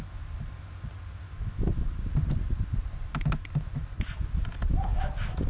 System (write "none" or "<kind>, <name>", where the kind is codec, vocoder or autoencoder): none